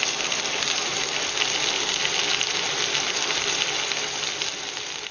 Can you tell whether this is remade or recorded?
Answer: recorded